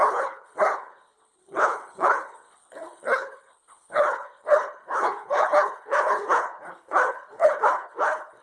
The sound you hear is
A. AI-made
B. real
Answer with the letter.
A